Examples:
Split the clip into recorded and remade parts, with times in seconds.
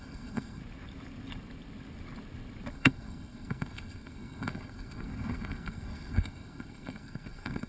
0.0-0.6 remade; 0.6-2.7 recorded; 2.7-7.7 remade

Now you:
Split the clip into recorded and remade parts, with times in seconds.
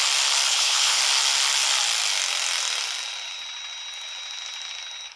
0.0-0.5 recorded; 0.5-1.0 remade; 1.0-5.2 recorded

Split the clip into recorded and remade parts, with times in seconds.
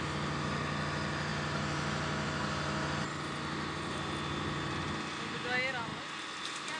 0.0-6.8 recorded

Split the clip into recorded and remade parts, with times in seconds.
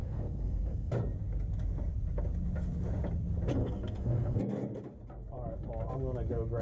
0.0-0.9 remade; 0.9-3.6 recorded; 3.6-4.4 remade; 4.4-6.6 recorded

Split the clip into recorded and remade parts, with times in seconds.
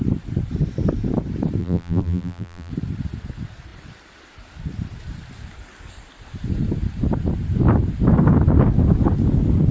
0.0-1.6 recorded; 1.6-2.7 remade; 2.7-9.7 recorded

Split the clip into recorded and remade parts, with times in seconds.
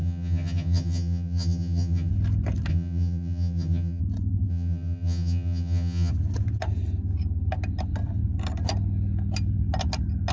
0.0-2.1 remade; 2.1-2.7 recorded; 2.7-4.0 remade; 4.0-4.5 recorded; 4.5-6.1 remade; 6.1-10.3 recorded